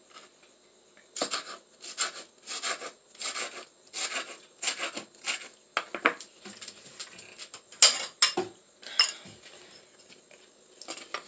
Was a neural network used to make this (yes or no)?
no